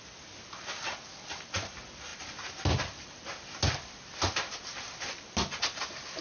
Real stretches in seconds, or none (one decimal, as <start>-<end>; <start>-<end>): 0.0-6.2